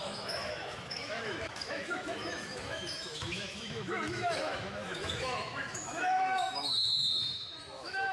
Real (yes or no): no